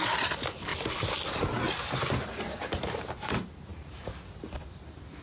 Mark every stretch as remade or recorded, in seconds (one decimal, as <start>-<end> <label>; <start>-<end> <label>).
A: 0.0-5.2 remade